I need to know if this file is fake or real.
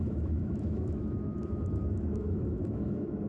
fake